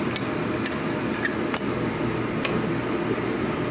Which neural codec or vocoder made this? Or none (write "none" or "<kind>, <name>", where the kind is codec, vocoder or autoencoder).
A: none